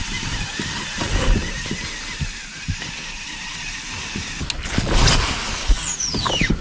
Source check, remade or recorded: recorded